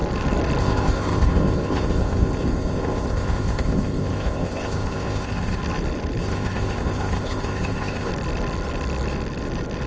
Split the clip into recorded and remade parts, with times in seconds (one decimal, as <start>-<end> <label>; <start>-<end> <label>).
0.0-0.6 recorded; 0.6-5.6 remade; 5.6-6.2 recorded; 6.2-8.1 remade; 8.1-9.9 recorded